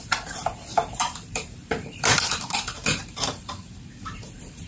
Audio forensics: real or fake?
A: fake